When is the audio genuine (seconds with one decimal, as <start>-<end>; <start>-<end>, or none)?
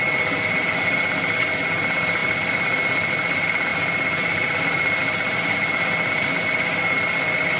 0.0-7.6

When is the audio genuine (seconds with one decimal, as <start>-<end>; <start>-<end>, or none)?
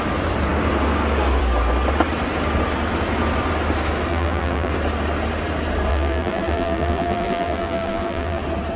0.0-4.1; 4.7-5.9; 8.4-8.8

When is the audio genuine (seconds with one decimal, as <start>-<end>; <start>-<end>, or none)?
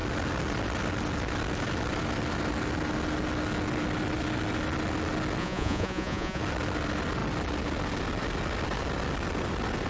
0.0-5.4; 6.4-9.9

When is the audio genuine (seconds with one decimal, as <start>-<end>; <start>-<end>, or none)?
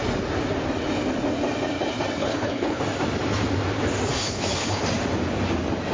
0.0-2.2; 2.8-4.1; 4.8-5.9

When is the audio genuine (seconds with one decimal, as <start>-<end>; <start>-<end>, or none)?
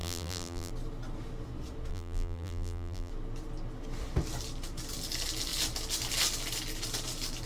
0.7-1.9; 3.1-7.5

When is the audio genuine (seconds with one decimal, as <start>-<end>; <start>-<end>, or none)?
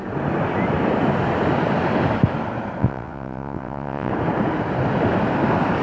0.0-2.8; 4.1-5.8